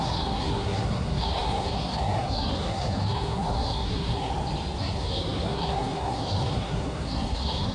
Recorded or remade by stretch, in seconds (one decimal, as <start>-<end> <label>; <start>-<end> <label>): 0.0-4.3 remade; 4.3-4.8 recorded; 4.8-7.7 remade